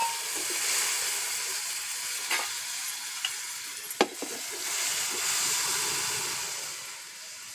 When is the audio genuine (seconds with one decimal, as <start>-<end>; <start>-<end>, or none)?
0.0-7.5